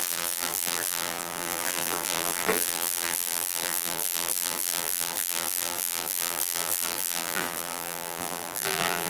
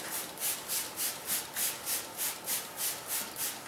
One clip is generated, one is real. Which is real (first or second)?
second